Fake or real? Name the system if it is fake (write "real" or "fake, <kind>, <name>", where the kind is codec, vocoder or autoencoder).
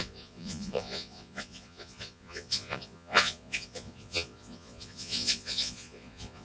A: fake, vocoder, Vocos